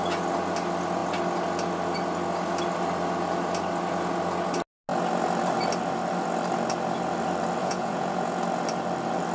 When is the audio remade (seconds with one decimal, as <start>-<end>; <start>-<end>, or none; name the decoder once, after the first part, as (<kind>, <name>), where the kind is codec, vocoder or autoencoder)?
7.6-8.4 (vocoder, Vocos)